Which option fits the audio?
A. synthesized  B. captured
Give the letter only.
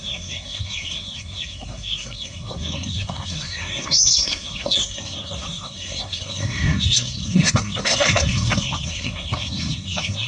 A